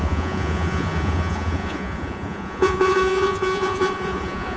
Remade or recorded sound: remade